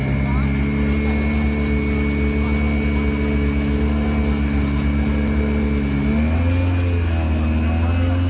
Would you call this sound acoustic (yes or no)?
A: yes